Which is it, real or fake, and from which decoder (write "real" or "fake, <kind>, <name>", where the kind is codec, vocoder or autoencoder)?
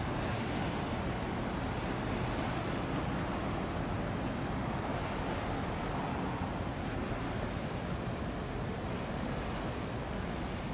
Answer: real